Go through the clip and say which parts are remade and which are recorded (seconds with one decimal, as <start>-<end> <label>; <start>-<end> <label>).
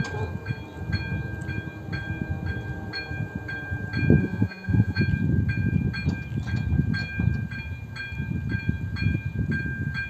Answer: 0.0-4.2 recorded; 4.2-5.0 remade; 5.0-10.1 recorded